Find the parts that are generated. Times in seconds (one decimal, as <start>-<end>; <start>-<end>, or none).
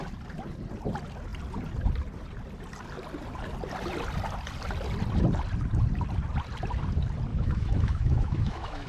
7.3-8.9